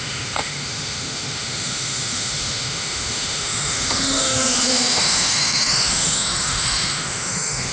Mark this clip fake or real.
fake